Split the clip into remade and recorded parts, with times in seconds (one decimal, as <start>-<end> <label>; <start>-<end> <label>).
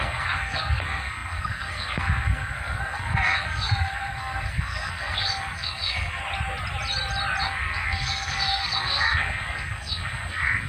0.0-6.2 remade; 6.2-7.4 recorded; 7.4-10.7 remade